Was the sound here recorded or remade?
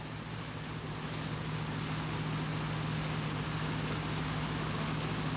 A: recorded